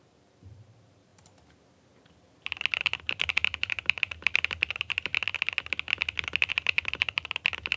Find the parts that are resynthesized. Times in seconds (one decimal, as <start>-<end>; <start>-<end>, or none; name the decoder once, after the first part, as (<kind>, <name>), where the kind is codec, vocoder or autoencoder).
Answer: 0.0-1.1 (vocoder, BigVGAN v2); 2.8-5.1; 6.5-7.8